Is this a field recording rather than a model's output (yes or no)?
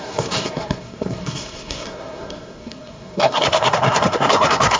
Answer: no